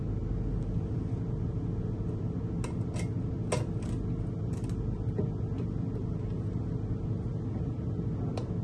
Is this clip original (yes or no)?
yes